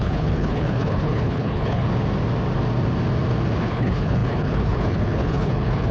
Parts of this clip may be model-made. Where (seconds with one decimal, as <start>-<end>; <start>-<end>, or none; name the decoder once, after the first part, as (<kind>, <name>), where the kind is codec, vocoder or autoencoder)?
0.0-1.9 (codec, HILCodec); 3.6-5.9